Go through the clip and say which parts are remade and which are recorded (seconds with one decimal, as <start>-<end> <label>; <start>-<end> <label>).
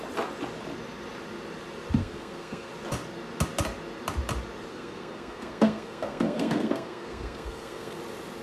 0.0-2.0 recorded; 2.0-2.7 remade; 2.7-4.7 recorded; 4.7-8.0 remade; 8.0-8.4 recorded